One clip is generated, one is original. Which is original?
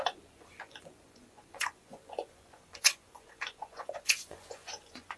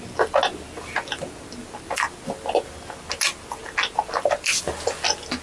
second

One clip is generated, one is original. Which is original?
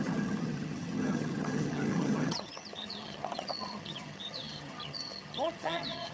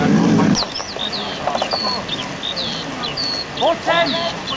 second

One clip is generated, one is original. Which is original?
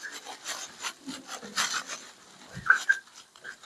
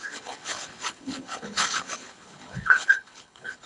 first